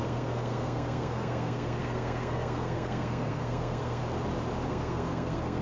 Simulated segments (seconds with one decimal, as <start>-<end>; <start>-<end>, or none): 0.0-4.0; 4.7-5.6